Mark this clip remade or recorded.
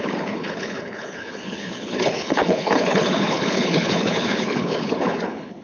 remade